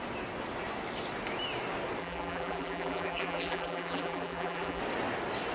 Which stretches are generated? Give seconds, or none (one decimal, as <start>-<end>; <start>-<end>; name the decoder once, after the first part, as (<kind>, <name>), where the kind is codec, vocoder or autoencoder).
2.0-4.8 (vocoder, BigVGAN v2)